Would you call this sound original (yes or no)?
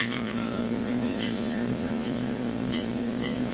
no